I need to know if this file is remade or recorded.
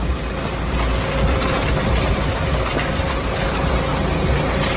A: recorded